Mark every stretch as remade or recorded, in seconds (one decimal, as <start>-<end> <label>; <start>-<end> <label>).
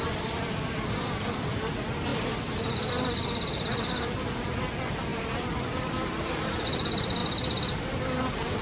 0.0-2.1 recorded; 2.1-2.9 remade; 2.9-5.1 recorded; 5.1-6.2 remade; 6.2-8.6 recorded